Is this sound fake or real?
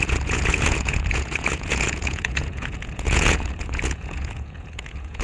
fake